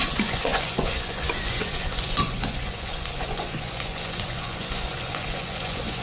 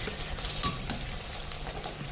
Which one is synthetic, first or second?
first